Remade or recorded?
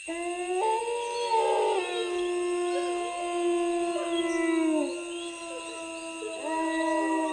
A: recorded